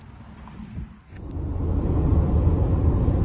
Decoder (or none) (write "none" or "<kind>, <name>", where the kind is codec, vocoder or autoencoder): none